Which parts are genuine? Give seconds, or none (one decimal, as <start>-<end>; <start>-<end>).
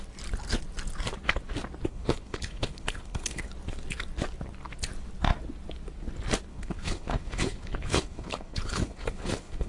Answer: 0.0-1.9; 3.5-6.5